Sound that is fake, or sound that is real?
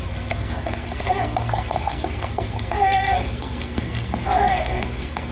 fake